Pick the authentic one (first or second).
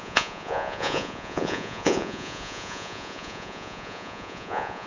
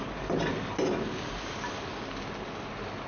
second